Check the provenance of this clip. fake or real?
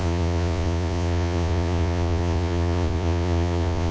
fake